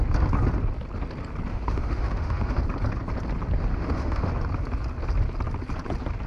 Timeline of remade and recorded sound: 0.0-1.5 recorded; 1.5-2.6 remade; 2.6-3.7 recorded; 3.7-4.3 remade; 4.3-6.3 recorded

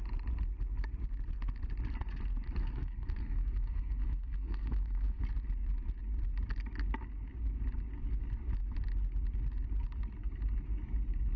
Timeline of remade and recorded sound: 0.0-2.6 recorded; 2.6-5.2 remade; 5.2-11.4 recorded

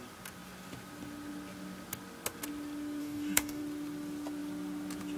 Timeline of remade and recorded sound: 0.0-3.0 recorded; 3.0-3.6 remade; 3.6-5.2 recorded

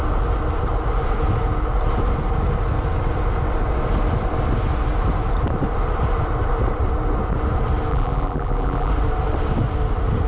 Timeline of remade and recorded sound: 0.0-7.9 recorded; 7.9-8.9 remade; 8.9-10.3 recorded

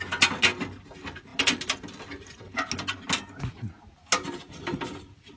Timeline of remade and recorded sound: 0.0-5.4 recorded

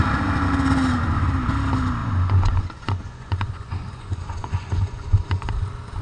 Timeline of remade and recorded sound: 0.0-2.0 recorded; 2.0-5.5 remade; 5.5-6.0 recorded

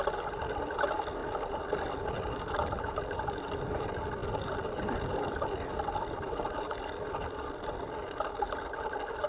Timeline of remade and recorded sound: 0.0-1.2 recorded; 1.2-2.6 remade; 2.6-4.2 recorded; 4.2-7.5 remade; 7.5-9.3 recorded

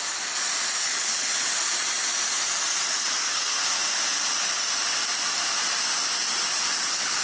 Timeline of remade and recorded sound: 0.0-0.8 recorded; 0.8-1.5 remade; 1.5-2.9 recorded; 2.9-3.6 remade; 3.6-6.5 recorded; 6.5-7.2 remade